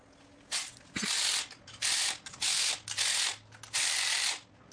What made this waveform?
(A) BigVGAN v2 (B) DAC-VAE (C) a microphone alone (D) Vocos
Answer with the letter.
C